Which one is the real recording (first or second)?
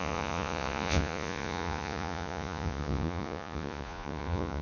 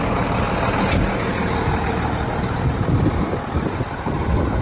second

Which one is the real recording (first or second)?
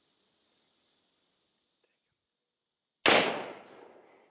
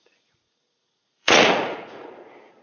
first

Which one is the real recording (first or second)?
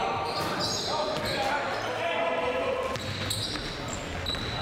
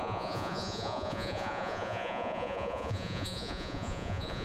first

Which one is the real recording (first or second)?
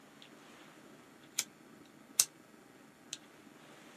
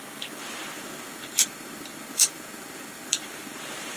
first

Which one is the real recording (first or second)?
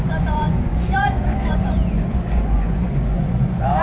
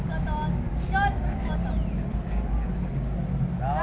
second